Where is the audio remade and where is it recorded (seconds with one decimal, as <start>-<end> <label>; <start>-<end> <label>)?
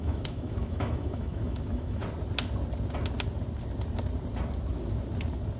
0.0-2.0 remade; 2.0-5.6 recorded